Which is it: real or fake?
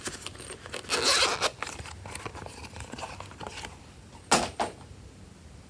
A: real